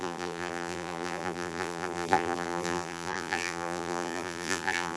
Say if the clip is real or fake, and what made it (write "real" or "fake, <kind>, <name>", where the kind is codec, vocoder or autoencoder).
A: fake, vocoder, BigVGAN v2